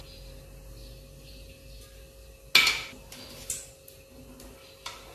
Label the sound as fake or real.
real